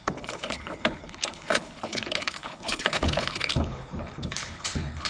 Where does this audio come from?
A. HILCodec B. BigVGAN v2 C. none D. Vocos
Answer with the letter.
A